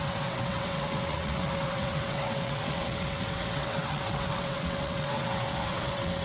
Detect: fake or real fake